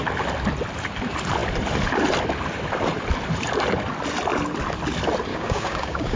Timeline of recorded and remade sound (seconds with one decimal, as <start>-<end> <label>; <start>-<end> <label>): 0.0-5.3 recorded; 5.3-6.2 remade